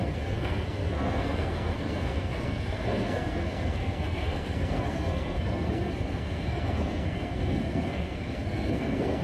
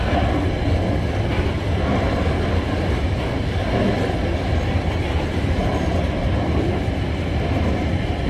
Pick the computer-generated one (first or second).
first